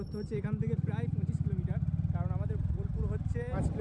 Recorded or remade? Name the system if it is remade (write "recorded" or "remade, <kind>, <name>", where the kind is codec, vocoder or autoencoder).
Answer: recorded